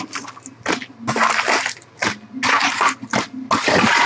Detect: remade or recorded recorded